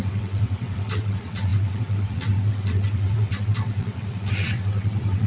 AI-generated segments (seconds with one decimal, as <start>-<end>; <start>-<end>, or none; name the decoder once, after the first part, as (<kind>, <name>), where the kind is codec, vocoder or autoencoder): 0.0-5.3 (vocoder, WaveNeXt)